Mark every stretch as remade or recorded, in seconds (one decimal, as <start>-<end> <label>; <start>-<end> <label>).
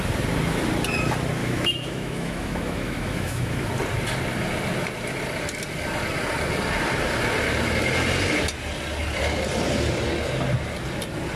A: 0.0-1.4 recorded; 1.4-3.7 remade; 3.7-11.4 recorded